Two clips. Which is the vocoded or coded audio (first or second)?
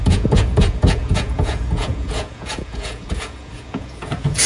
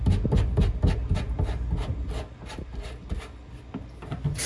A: first